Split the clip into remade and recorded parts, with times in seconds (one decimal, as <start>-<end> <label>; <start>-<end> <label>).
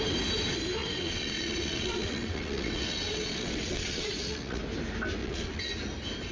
0.0-0.8 recorded; 0.8-4.6 remade; 4.6-5.2 recorded; 5.2-5.7 remade; 5.7-6.3 recorded